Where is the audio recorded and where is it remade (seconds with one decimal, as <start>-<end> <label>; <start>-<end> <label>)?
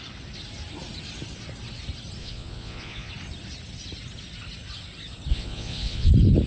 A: 0.0-2.2 recorded; 2.2-3.1 remade; 3.1-5.3 recorded; 5.3-6.1 remade; 6.1-6.5 recorded